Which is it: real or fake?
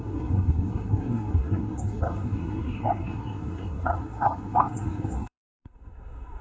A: fake